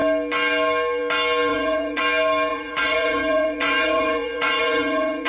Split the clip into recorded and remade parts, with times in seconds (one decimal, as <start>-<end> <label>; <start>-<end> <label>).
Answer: 0.0-1.5 recorded; 1.5-2.0 remade; 2.0-2.5 recorded; 2.5-5.3 remade